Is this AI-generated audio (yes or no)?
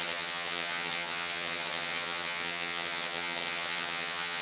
yes